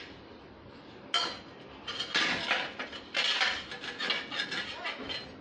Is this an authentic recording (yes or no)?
yes